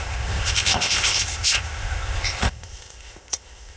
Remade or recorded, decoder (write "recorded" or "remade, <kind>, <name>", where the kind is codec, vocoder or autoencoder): remade, codec, ZipCodec